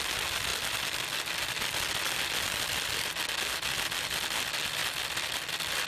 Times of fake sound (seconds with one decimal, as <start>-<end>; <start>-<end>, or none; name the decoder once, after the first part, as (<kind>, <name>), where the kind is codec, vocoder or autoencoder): none